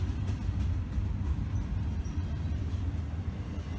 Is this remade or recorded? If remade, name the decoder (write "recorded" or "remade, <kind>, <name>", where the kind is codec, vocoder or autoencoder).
recorded